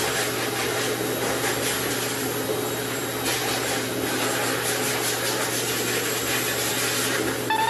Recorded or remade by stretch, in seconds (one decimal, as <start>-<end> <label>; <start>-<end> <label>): 0.0-7.7 recorded

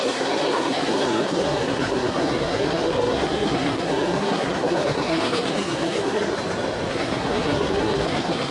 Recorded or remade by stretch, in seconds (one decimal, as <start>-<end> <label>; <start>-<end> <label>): 0.0-6.3 remade; 6.3-6.9 recorded; 6.9-8.5 remade

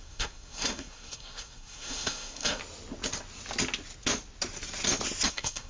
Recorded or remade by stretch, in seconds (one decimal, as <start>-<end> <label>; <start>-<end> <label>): 0.0-2.6 remade; 2.6-5.3 recorded; 5.3-5.7 remade

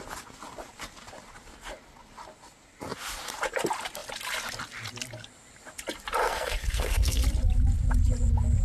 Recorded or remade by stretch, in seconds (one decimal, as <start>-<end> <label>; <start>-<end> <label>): 0.0-6.2 recorded; 6.2-7.2 remade; 7.2-8.6 recorded

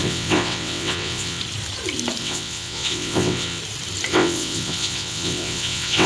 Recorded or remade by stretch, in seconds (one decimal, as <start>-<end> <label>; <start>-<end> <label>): 0.0-1.4 remade; 1.4-2.2 recorded; 2.2-3.6 remade; 3.6-4.1 recorded; 4.1-6.1 remade